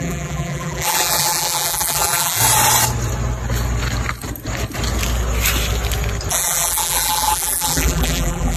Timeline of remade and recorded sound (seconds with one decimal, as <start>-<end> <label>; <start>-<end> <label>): 0.0-2.4 remade; 2.4-6.3 recorded; 6.3-8.6 remade